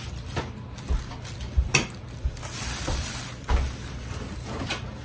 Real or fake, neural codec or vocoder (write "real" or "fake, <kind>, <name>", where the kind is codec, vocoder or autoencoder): real